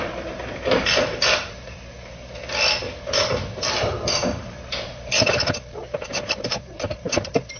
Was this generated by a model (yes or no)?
yes